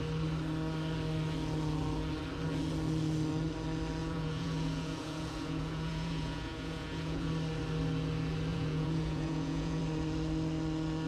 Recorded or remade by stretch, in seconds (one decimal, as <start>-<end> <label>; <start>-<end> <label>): 0.0-4.0 recorded; 4.0-7.3 remade; 7.3-8.5 recorded; 8.5-9.8 remade; 9.8-11.1 recorded